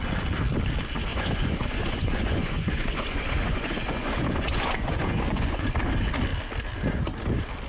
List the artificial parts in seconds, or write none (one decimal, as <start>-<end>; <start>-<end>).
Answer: 1.1-5.7